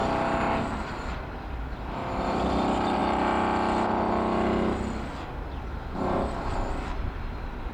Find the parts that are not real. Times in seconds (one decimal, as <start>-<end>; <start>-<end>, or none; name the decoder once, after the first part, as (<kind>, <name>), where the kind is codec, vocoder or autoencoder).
none